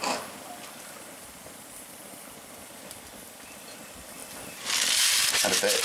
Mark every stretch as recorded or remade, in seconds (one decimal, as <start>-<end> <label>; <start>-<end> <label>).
0.0-5.8 recorded